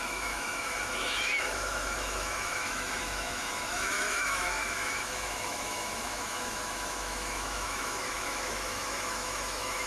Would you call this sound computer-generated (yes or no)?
yes